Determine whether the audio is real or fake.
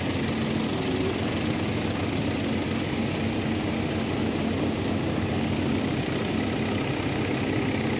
real